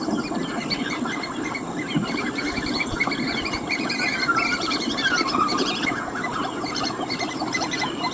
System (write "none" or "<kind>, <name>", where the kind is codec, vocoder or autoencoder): vocoder, BigVGAN v2